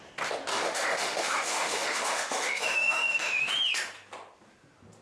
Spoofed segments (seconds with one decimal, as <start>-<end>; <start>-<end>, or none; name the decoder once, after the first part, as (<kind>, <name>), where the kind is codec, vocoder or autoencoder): 0.5-3.5 (autoencoder, DAC-VAE)